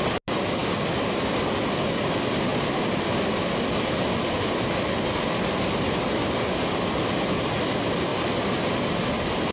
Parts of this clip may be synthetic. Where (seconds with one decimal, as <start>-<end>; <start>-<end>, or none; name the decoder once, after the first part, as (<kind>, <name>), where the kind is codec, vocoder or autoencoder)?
none